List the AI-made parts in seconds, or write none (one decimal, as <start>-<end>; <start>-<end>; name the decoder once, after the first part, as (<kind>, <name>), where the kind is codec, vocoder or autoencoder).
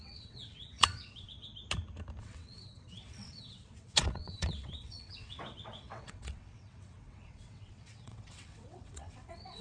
0.0-1.5 (vocoder, WaveNeXt); 2.2-9.6